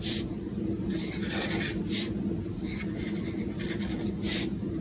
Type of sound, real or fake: real